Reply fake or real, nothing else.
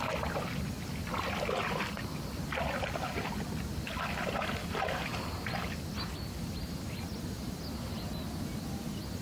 real